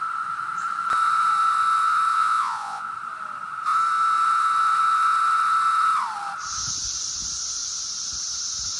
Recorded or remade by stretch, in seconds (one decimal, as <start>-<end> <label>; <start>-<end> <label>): 0.0-2.1 recorded; 2.1-2.9 remade; 2.9-8.8 recorded